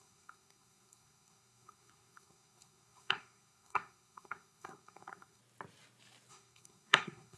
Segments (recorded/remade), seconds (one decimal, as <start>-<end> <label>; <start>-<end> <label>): 0.0-5.4 remade; 5.4-6.3 recorded; 6.3-7.4 remade